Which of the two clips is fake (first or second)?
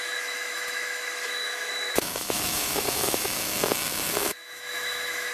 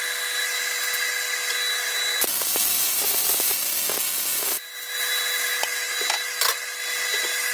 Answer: first